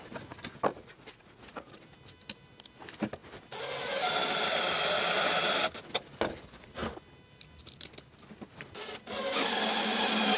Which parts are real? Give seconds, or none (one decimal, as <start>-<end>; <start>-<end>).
0.0-0.7; 1.8-10.4